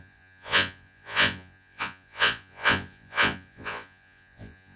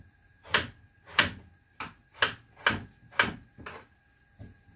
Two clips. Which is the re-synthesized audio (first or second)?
first